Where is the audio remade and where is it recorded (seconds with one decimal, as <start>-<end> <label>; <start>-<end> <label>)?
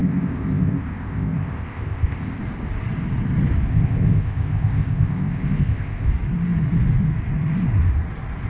0.0-2.4 remade; 2.4-3.7 recorded; 3.7-6.1 remade; 6.1-8.5 recorded